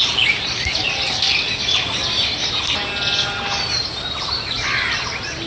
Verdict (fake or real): real